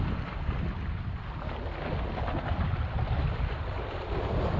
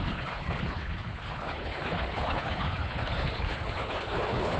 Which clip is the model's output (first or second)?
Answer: second